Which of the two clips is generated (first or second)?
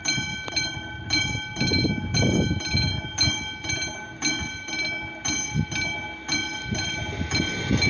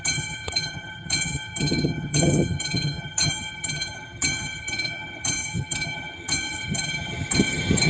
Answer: second